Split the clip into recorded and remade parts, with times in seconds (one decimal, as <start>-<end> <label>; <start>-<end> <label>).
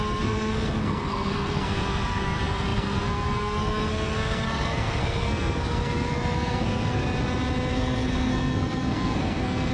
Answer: 0.0-7.0 remade; 7.0-7.7 recorded; 7.7-9.7 remade